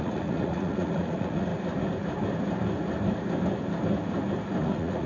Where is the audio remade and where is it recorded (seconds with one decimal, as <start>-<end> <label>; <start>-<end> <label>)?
0.0-1.5 remade; 1.5-4.6 recorded; 4.6-5.1 remade